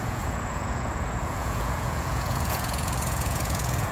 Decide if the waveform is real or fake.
fake